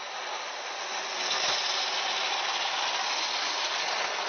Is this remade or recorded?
recorded